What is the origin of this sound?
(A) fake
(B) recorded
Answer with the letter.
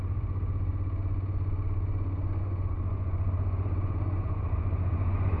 A